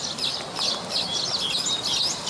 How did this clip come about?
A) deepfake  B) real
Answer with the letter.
B